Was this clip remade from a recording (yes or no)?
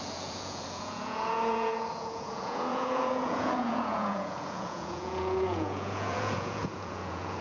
yes